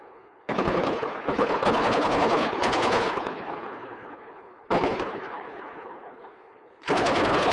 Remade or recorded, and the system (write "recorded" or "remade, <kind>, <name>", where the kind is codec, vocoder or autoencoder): remade, codec, HILCodec